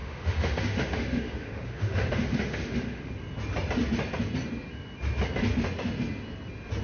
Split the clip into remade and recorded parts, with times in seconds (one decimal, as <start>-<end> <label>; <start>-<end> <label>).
0.0-3.1 remade; 3.1-6.8 recorded